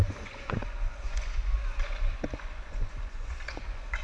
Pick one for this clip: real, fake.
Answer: fake